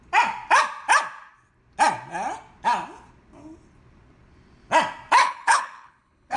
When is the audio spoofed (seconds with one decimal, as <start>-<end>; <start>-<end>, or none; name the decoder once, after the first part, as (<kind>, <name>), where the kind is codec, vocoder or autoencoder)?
5.2-6.4 (codec, HILCodec)